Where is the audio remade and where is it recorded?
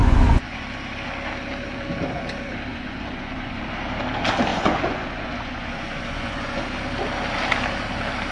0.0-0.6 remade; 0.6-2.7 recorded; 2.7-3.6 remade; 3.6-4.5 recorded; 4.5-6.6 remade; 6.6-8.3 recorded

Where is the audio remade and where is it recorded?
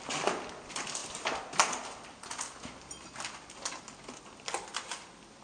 0.0-5.4 recorded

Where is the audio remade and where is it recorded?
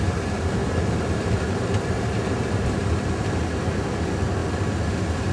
0.0-0.6 recorded; 0.6-2.2 remade; 2.2-2.8 recorded; 2.8-3.4 remade; 3.4-5.3 recorded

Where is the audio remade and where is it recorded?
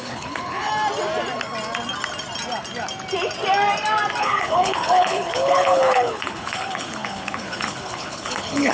0.0-0.7 remade; 0.7-4.2 recorded; 4.2-8.7 remade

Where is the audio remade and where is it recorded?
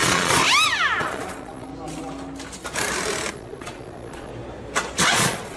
0.0-0.4 remade; 0.4-1.0 recorded; 1.0-1.7 remade; 1.7-3.3 recorded; 3.3-4.3 remade; 4.3-5.1 recorded; 5.1-5.6 remade